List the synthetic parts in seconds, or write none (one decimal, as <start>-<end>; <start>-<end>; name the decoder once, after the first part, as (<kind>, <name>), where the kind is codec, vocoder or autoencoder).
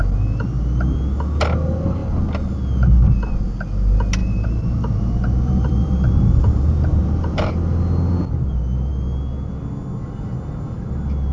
4.2-7.5 (vocoder, BigVGAN v2)